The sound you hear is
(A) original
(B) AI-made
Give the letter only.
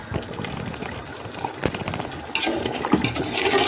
A